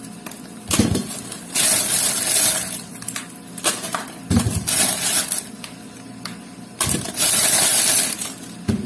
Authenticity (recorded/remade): recorded